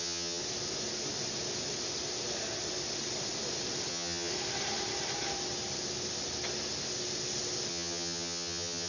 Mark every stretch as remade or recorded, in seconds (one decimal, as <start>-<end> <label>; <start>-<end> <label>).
0.0-0.4 remade; 0.4-3.9 recorded; 3.9-4.3 remade; 4.3-7.7 recorded; 7.7-8.9 remade